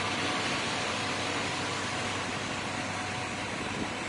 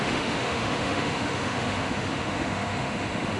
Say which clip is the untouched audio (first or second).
first